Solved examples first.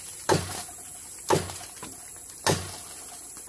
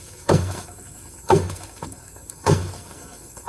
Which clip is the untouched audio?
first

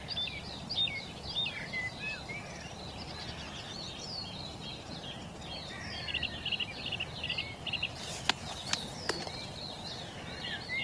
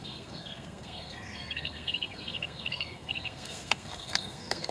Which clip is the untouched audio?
first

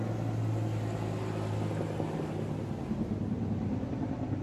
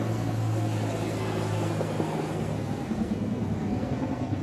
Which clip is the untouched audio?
first